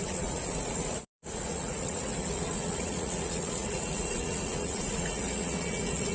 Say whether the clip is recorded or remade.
remade